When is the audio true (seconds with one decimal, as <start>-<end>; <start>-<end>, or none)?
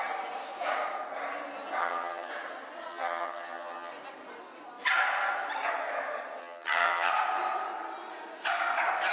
0.0-1.8; 2.3-2.9; 3.9-6.4; 7.1-9.1